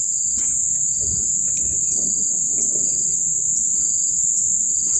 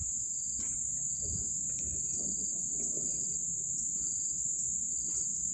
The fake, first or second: second